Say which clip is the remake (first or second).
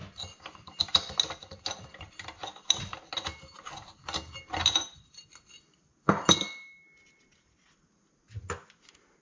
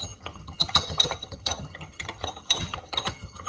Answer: second